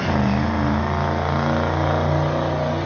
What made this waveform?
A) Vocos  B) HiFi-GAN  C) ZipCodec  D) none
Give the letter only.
D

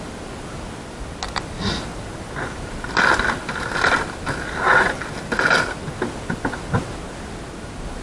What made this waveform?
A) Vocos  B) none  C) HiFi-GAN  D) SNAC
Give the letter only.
B